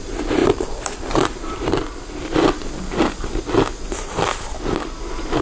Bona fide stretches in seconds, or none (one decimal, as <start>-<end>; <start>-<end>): 0.0-0.4; 1.7-5.4